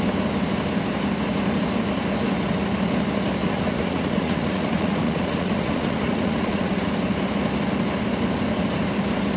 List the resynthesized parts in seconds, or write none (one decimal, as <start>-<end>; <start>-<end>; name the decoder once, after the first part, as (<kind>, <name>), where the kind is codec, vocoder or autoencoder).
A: 3.4-6.8 (vocoder, Vocos)